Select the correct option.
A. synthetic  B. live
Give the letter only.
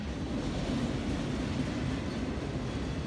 B